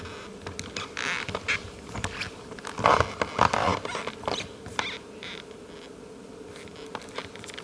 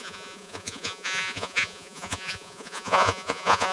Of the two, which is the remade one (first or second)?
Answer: second